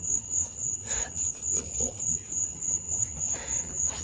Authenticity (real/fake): fake